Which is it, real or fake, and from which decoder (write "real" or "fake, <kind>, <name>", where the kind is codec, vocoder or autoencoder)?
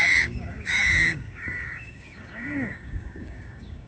fake, codec, DAC